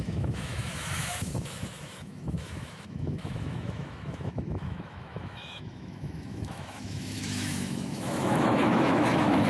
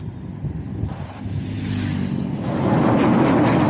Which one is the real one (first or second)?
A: second